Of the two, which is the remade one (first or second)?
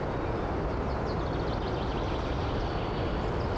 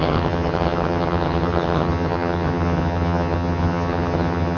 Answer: second